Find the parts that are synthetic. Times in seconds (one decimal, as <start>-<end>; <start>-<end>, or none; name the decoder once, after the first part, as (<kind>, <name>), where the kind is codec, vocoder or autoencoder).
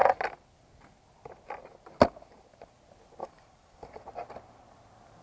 3.2-4.0 (vocoder, BigVGAN v2)